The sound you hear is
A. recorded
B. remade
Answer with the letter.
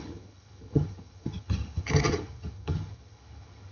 B